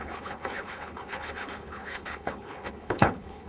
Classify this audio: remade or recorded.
remade